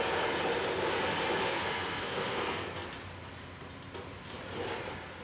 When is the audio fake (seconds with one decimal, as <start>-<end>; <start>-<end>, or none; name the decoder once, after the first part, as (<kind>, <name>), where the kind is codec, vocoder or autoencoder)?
1.5-2.6 (codec, SNAC)